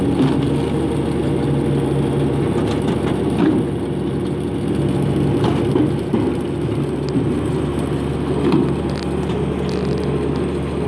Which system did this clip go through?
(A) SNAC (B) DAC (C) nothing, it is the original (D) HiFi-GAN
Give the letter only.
C